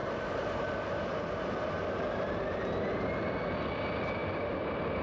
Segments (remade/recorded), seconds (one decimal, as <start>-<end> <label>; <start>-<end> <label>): 0.0-5.0 recorded